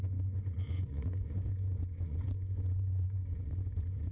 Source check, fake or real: fake